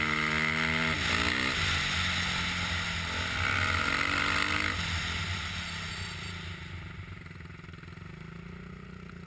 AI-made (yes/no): no